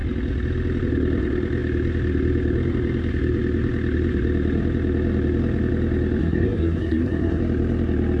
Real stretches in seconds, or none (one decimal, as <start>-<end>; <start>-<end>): 0.0-6.2; 7.4-8.2